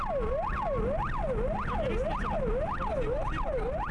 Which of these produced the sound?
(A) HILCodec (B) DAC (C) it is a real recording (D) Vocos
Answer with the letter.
C